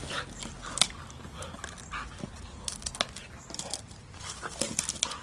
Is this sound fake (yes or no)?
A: no